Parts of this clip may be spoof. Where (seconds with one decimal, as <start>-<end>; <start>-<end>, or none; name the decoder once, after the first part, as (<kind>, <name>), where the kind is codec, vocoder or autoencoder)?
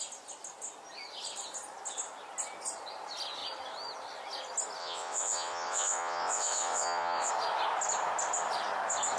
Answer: 4.8-7.3 (vocoder, WaveNeXt)